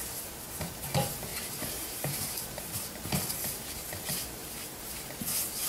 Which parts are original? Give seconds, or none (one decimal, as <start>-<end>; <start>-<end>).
0.0-1.3; 3.7-4.4; 5.1-5.7